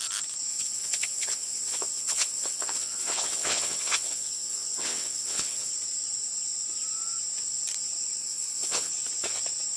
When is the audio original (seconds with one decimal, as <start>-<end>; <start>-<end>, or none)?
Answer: 0.0-0.5; 5.7-8.2; 8.9-9.8